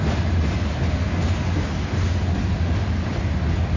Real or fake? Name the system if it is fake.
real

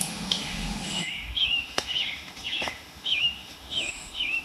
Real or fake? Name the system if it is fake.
fake, autoencoder, DAC-VAE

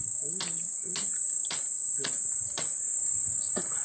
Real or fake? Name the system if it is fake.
real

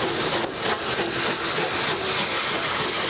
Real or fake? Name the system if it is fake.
real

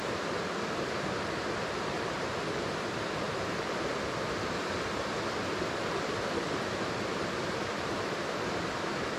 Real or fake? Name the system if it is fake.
real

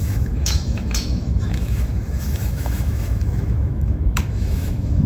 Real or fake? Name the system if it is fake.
fake, autoencoder, DAC-VAE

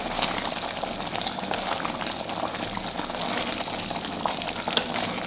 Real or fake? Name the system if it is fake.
real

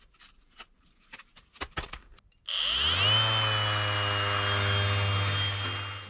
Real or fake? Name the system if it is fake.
real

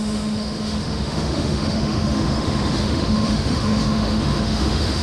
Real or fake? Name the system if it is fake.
fake, autoencoder, DAC-VAE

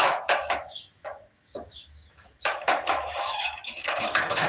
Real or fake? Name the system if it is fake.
fake, autoencoder, DAC-VAE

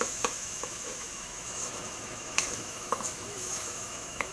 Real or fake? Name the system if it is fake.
fake, autoencoder, DAC-VAE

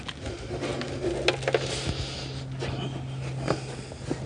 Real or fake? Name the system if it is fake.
real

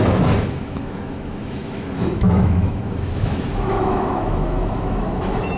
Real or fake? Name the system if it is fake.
fake, autoencoder, DAC-VAE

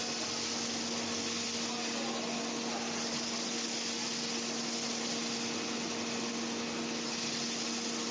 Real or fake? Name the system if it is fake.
real